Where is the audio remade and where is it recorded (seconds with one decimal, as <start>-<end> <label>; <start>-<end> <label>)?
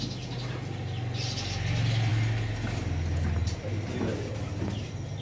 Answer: 0.0-5.2 recorded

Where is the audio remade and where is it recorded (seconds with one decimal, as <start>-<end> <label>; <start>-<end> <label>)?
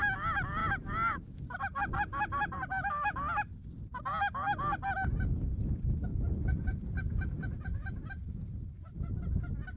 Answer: 0.0-0.6 recorded; 0.6-1.6 remade; 1.6-2.1 recorded; 2.1-3.2 remade; 3.2-6.1 recorded; 6.1-9.2 remade; 9.2-9.8 recorded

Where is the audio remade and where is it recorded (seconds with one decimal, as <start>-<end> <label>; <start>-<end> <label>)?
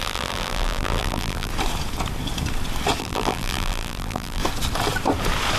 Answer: 0.0-1.5 remade; 1.5-3.0 recorded; 3.0-4.4 remade; 4.4-5.6 recorded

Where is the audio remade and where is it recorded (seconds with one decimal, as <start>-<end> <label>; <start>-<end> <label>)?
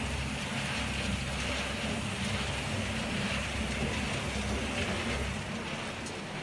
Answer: 0.0-3.0 recorded; 3.0-4.2 remade; 4.2-6.4 recorded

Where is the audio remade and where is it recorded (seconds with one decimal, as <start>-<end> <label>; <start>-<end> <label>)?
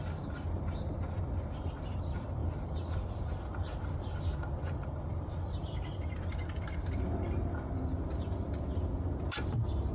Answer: 0.0-9.9 recorded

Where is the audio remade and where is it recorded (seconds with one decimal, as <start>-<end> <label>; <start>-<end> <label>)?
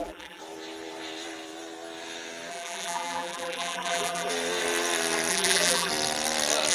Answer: 0.0-0.4 remade; 0.4-2.5 recorded; 2.5-4.3 remade; 4.3-5.3 recorded; 5.3-5.9 remade; 5.9-6.7 recorded